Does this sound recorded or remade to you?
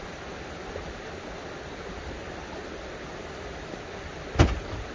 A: recorded